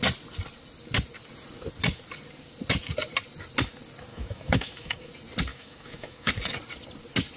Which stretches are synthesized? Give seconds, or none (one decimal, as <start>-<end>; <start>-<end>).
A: 4.1-5.1; 5.5-6.3